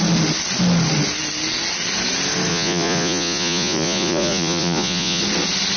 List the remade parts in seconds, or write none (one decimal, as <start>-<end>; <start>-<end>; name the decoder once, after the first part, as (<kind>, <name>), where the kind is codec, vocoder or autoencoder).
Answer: 2.5-5.2 (vocoder, Vocos)